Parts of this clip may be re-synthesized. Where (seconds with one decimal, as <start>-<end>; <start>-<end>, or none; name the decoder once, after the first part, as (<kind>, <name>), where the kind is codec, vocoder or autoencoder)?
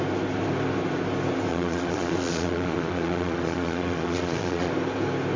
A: 1.5-4.7 (vocoder, Vocos)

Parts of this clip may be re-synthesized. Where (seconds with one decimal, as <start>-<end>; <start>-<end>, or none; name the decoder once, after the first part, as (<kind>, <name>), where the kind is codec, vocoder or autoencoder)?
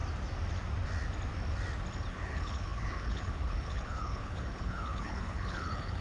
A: 2.1-6.0 (codec, HILCodec)